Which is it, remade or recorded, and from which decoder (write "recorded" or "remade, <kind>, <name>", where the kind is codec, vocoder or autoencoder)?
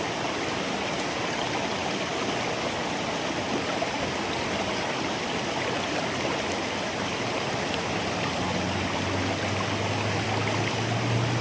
recorded